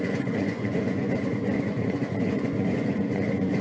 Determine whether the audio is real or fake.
fake